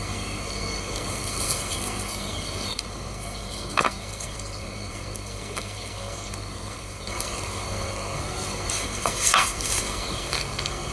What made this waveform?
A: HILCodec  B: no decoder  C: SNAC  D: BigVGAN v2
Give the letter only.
C